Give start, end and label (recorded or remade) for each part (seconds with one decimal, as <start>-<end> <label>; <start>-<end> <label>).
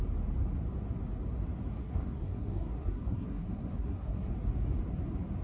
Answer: 0.0-1.8 recorded; 1.8-4.3 remade; 4.3-5.4 recorded